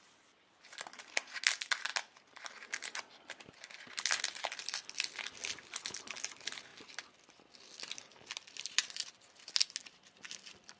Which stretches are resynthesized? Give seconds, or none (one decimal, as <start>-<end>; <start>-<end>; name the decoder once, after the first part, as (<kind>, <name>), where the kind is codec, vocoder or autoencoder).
6.7-9.1 (vocoder, BigVGAN v2)